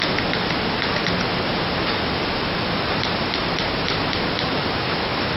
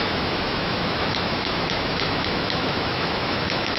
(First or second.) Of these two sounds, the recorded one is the first